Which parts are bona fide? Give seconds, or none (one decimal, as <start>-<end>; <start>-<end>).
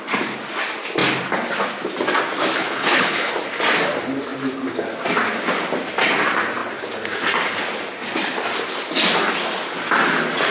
0.0-2.6; 3.3-10.5